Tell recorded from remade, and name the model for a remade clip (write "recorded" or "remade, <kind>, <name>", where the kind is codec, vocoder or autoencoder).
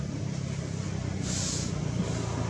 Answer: recorded